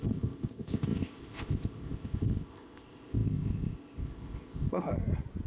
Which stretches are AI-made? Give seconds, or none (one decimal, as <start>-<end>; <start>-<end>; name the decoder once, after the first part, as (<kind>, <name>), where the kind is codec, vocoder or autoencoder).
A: 0.0-4.9 (codec, ZipCodec)